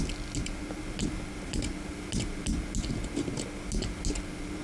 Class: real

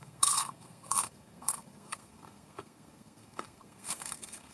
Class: fake